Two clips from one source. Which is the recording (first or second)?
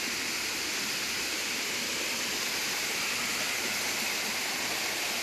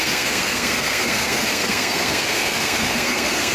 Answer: first